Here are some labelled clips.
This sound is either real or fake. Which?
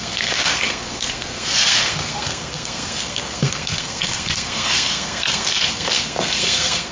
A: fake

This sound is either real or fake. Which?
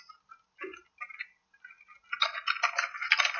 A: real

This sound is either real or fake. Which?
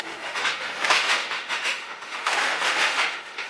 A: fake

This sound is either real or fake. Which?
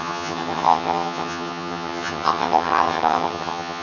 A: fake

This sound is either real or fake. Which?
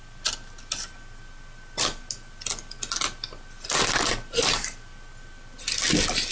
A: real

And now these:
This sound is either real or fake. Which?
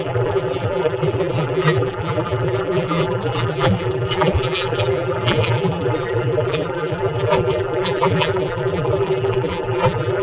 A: fake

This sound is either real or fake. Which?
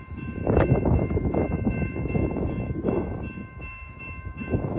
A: fake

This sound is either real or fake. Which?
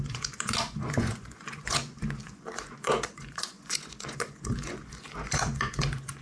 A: fake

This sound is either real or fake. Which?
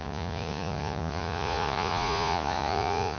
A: fake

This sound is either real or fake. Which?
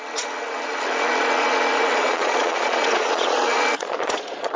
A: fake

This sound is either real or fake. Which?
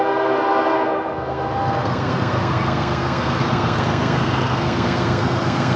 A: fake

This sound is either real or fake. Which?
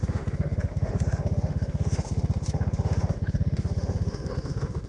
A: fake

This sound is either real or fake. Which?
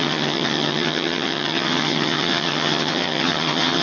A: fake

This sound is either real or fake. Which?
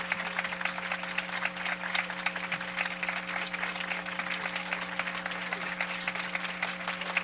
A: real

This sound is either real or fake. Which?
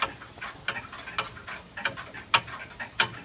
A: real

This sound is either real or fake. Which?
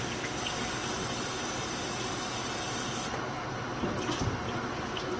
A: real